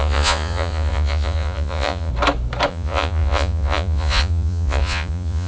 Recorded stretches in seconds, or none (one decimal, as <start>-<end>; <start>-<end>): 2.1-2.7